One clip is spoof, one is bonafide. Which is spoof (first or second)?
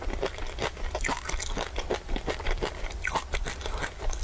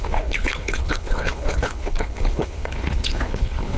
second